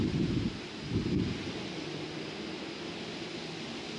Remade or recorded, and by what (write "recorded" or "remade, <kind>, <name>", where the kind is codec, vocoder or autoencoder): recorded